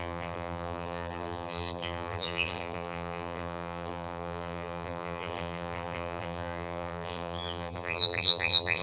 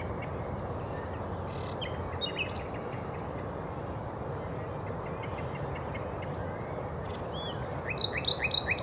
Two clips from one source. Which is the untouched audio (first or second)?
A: second